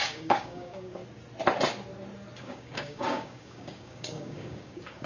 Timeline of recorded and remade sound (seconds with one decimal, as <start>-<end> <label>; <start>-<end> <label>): 0.0-1.0 remade; 1.0-2.4 recorded; 2.4-5.1 remade